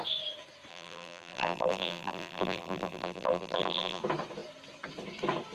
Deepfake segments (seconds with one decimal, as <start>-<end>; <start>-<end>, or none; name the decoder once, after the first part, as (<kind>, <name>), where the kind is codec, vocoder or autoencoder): 0.7-4.0 (vocoder, BigVGAN v2)